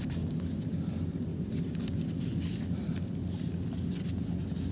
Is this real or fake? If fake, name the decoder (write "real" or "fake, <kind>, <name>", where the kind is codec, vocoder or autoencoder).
real